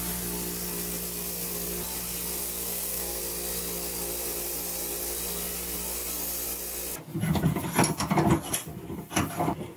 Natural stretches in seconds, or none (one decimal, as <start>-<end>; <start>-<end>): 0.0-2.4; 3.2-9.8